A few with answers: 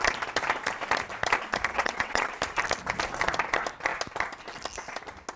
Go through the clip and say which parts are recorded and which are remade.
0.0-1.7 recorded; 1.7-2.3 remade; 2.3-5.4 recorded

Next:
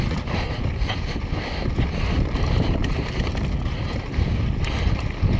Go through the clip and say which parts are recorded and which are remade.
0.0-5.4 recorded

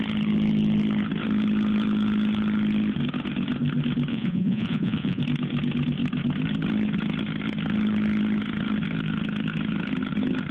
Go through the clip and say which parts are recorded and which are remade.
0.0-4.1 recorded; 4.1-5.2 remade; 5.2-10.5 recorded

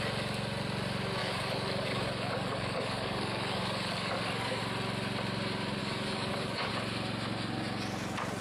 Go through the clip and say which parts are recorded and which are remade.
0.0-1.2 recorded; 1.2-4.6 remade; 4.6-5.8 recorded; 5.8-6.7 remade; 6.7-8.4 recorded

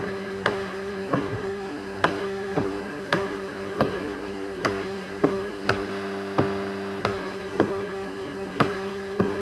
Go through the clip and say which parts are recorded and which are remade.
0.0-5.9 remade; 5.9-7.0 recorded; 7.0-9.4 remade